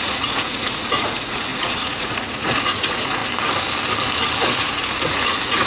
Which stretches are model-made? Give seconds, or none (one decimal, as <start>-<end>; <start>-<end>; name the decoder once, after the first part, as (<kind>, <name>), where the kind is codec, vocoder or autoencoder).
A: 0.0-3.2 (vocoder, Vocos); 4.4-5.7